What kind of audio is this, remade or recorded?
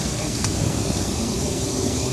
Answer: remade